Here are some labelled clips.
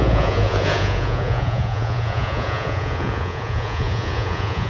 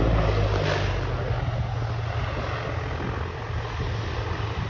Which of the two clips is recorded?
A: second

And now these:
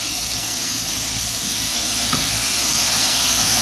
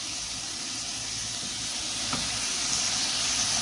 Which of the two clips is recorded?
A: second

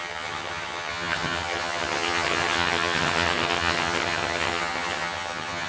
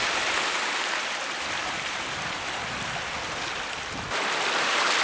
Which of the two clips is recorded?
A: second